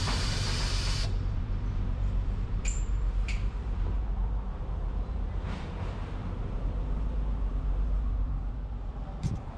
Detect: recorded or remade remade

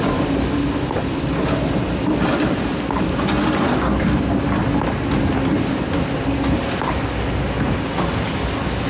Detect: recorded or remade recorded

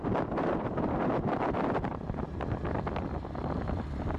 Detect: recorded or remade recorded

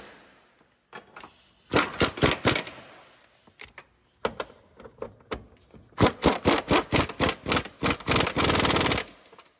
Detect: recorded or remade recorded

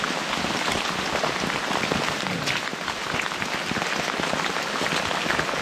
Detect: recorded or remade recorded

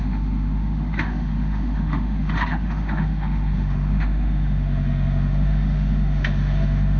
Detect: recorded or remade remade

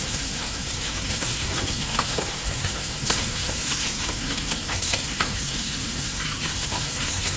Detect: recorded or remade remade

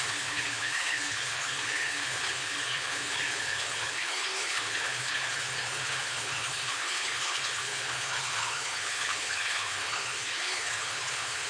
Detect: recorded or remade remade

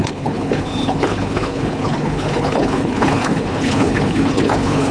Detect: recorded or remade remade